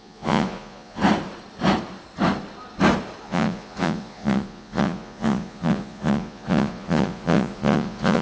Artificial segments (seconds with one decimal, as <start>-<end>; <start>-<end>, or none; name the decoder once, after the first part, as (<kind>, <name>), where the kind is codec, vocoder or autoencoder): 0.0-1.0 (vocoder, Vocos); 3.2-8.2